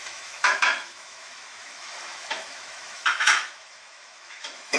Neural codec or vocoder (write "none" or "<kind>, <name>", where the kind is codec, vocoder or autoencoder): autoencoder, DAC-VAE